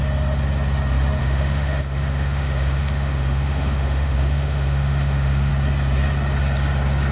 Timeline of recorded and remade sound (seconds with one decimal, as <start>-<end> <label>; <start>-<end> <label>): 0.0-1.2 recorded; 1.2-5.5 remade; 5.5-7.1 recorded